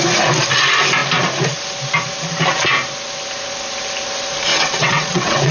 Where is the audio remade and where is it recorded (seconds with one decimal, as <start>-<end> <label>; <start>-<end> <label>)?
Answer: 0.0-4.5 recorded; 4.5-5.5 remade